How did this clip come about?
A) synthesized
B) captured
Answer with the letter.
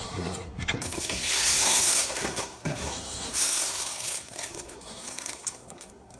A